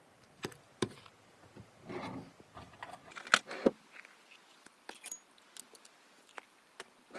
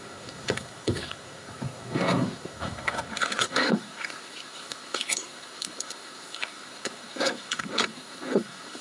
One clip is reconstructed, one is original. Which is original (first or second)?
first